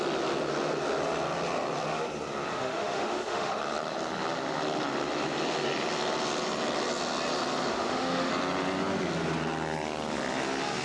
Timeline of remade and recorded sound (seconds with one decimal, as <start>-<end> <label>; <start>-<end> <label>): 0.0-2.5 recorded; 2.5-3.6 remade; 3.6-7.7 recorded; 7.7-8.3 remade; 8.3-10.8 recorded